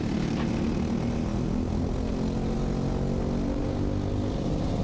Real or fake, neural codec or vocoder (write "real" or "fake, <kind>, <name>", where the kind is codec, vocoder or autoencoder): real